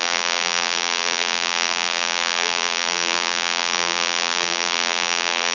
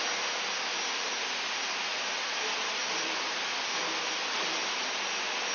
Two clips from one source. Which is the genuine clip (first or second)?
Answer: second